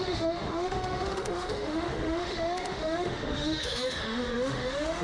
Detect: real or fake fake